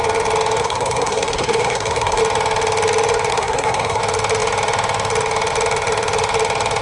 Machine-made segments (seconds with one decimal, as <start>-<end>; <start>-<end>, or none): 0.6-2.2; 3.3-4.0